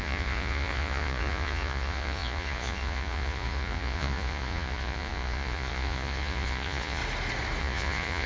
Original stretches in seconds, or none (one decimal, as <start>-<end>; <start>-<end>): 7.0-7.6